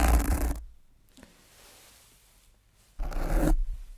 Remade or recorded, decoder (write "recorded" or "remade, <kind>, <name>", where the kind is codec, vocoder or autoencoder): remade, vocoder, BigVGAN v2